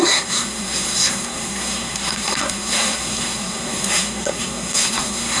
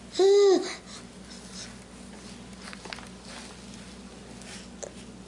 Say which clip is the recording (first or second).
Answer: second